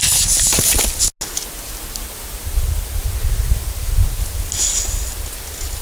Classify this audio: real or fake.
real